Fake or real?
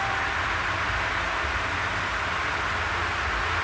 real